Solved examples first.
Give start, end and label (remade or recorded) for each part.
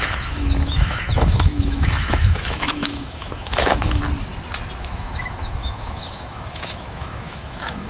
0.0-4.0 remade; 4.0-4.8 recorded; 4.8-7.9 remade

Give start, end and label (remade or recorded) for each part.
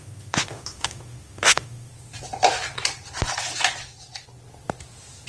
0.0-1.9 remade; 1.9-5.3 recorded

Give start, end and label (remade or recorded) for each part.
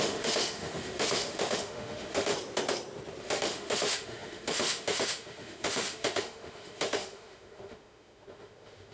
0.0-2.3 remade; 2.3-3.2 recorded; 3.2-8.9 remade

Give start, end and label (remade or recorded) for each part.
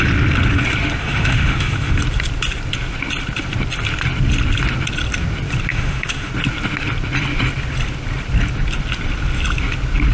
0.0-1.0 recorded; 1.0-2.0 remade; 2.0-5.7 recorded; 5.7-6.3 remade; 6.3-10.1 recorded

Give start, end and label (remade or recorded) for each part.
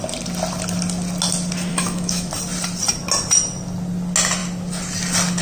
0.0-1.7 recorded; 1.7-2.3 remade; 2.3-5.4 recorded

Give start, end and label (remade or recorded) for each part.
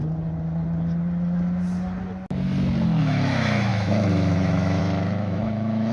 0.0-3.0 recorded; 3.0-5.9 remade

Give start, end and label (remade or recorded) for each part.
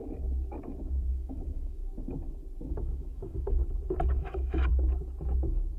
0.0-1.1 recorded; 1.1-1.8 remade; 1.8-2.7 recorded; 2.7-3.6 remade; 3.6-4.2 recorded; 4.2-4.7 remade; 4.7-5.8 recorded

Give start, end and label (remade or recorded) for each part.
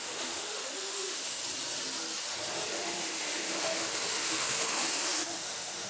0.0-1.4 remade; 1.4-2.7 recorded; 2.7-5.9 remade